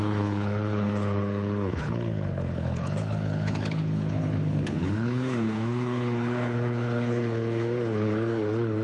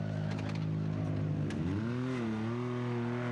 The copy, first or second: first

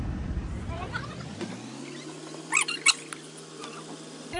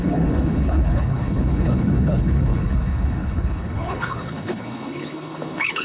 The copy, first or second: second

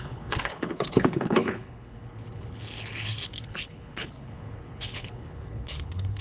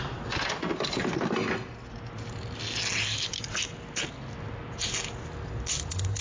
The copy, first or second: first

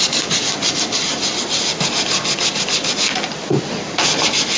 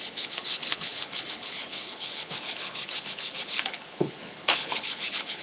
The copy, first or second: second